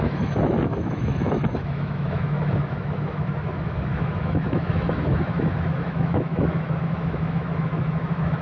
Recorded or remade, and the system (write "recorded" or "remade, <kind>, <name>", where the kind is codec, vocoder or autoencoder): remade, autoencoder, DAC-VAE